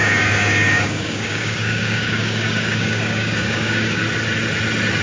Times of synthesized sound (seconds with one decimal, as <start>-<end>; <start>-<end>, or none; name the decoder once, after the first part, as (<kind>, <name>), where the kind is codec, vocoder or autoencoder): 0.0-4.0 (codec, DAC)

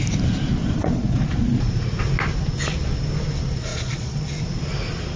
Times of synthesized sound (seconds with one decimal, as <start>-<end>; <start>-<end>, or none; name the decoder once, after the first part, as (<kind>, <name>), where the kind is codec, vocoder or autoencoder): 0.6-2.0 (vocoder, Vocos); 3.7-4.3

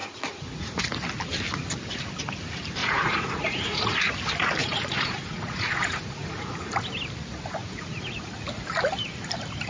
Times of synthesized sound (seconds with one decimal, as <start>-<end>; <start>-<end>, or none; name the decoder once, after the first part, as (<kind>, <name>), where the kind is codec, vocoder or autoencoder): 0.0-0.8 (vocoder, Vocos); 2.8-4.1; 4.6-6.7; 7.6-8.3

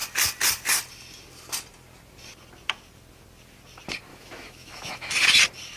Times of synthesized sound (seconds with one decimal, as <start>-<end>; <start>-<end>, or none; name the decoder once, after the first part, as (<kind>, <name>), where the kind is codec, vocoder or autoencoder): 4.1-5.1 (autoencoder, DAC-VAE)

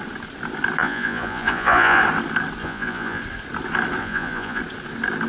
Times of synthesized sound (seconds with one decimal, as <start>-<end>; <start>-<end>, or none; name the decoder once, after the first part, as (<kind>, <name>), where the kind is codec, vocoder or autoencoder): 0.8-2.0 (vocoder, Vocos); 2.6-3.2; 4.0-4.6